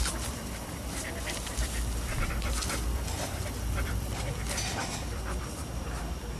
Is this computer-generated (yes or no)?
yes